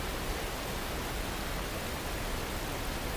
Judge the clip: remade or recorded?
recorded